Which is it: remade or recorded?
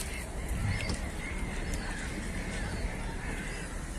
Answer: recorded